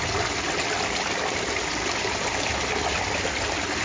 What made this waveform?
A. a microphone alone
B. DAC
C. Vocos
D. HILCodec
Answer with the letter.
A